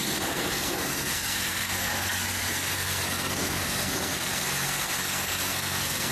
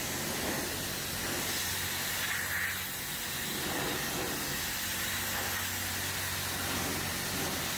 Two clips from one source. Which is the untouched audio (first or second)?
second